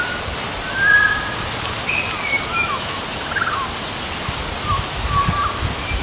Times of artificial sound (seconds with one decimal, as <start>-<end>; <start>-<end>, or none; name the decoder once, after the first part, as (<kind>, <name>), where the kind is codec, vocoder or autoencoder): 2.5-3.0 (autoencoder, DAC-VAE)